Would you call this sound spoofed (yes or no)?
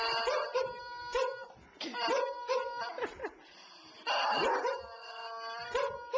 no